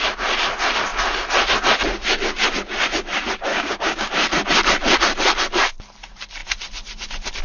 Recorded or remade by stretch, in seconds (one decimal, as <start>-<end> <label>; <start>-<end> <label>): 0.0-3.5 recorded; 3.5-4.1 remade; 4.1-7.4 recorded